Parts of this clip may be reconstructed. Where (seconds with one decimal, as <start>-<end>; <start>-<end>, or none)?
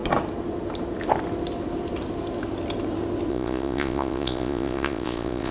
3.3-5.5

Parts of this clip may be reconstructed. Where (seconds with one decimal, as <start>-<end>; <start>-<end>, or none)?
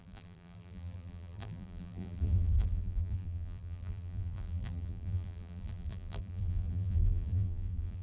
0.0-8.0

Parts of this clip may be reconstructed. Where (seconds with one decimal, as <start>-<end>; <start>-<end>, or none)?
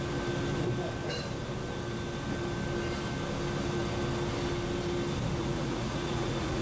5.4-6.6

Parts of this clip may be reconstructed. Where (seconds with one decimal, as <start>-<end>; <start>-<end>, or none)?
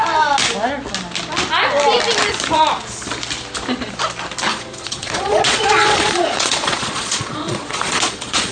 4.5-8.5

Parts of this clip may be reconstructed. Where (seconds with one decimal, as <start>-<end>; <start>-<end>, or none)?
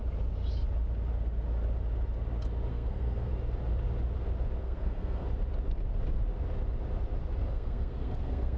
2.7-3.3; 4.6-5.2; 7.5-8.6